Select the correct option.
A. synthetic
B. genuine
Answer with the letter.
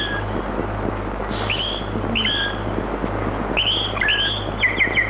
B